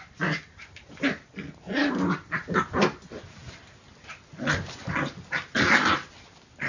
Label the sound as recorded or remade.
recorded